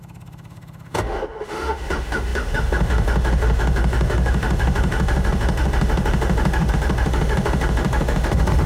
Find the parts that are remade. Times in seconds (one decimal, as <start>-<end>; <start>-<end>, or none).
0.0-8.7

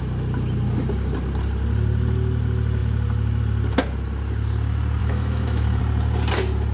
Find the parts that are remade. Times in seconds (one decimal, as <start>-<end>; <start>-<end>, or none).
5.0-5.8

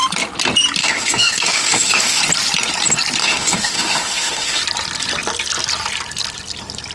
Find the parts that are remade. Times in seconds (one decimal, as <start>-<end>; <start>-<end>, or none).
0.8-2.2; 3.2-4.6

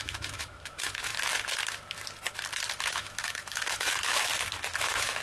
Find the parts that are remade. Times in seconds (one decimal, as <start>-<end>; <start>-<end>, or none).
0.0-1.1; 2.9-4.3; 4.8-5.2

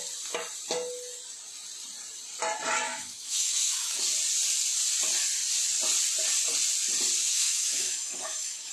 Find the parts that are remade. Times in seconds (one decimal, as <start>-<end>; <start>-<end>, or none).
2.9-4.0; 7.2-8.7